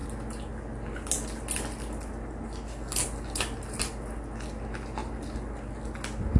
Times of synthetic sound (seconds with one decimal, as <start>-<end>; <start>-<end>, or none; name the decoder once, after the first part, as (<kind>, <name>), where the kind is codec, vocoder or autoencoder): none